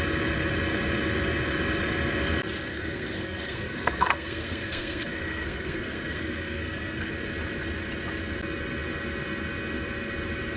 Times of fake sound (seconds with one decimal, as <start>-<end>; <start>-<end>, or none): 2.7-7.1